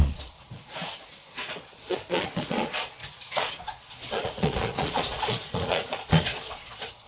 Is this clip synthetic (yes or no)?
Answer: yes